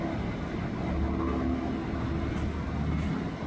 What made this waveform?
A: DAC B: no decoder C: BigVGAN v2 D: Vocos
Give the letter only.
B